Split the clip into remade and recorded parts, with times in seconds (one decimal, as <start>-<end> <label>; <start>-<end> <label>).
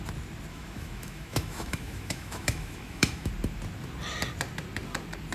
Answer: 0.0-0.5 recorded; 0.5-3.3 remade; 3.3-5.3 recorded